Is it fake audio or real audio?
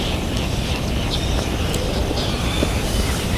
real